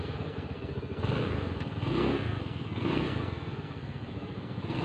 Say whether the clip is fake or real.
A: fake